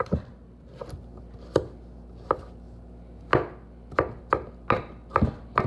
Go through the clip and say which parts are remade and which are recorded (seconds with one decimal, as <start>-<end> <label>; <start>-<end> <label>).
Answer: 0.0-5.7 recorded